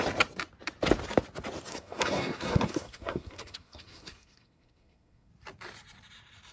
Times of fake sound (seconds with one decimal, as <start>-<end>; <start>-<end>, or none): 1.7-5.3